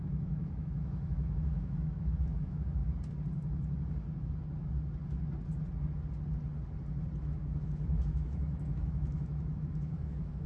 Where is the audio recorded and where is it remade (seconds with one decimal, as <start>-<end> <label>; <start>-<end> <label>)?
0.0-2.8 remade; 2.8-7.2 recorded; 7.2-10.5 remade